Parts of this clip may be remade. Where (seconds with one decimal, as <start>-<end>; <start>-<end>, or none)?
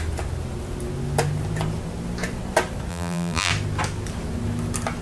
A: 2.9-3.5